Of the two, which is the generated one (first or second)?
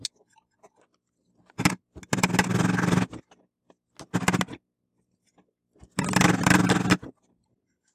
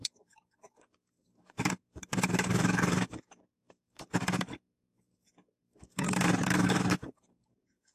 second